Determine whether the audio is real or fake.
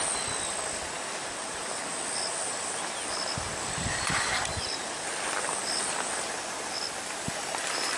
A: real